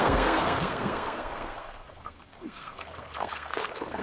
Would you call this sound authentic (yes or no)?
no